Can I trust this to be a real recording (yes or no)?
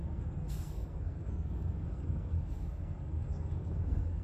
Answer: no